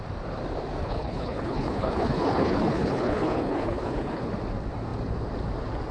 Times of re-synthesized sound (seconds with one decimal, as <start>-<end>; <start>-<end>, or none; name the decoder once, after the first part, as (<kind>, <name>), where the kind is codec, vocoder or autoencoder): 0.8-4.3 (codec, HILCodec)